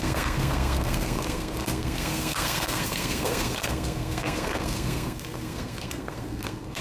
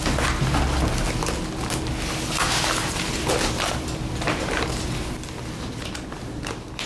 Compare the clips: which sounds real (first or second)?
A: second